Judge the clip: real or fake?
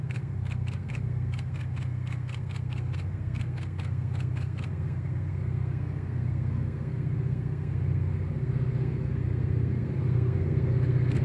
fake